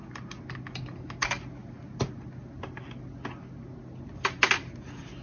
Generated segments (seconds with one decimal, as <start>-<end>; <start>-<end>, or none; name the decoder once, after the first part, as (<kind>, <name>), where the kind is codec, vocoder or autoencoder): none